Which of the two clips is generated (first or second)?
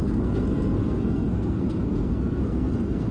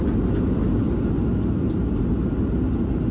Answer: first